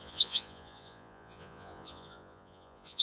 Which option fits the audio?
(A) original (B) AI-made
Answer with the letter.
B